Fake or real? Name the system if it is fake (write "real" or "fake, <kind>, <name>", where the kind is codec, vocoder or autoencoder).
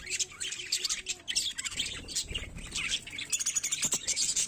real